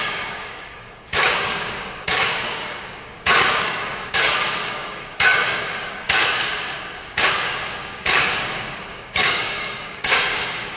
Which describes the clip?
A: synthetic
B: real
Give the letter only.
A